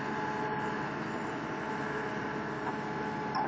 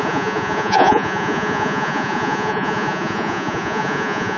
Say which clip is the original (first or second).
first